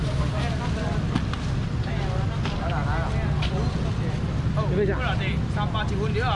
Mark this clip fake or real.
real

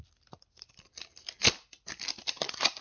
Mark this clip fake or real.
fake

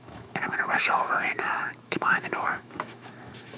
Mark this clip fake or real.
fake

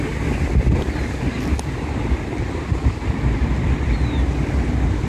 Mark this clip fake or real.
real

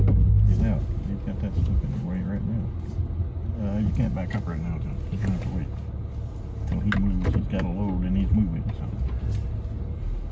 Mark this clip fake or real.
real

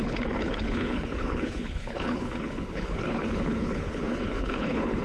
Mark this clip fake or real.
fake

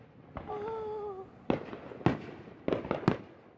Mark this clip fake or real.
real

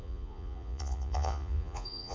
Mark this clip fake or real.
fake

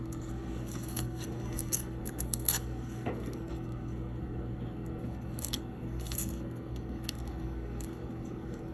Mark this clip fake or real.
fake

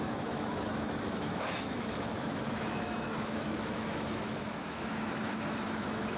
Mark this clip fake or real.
fake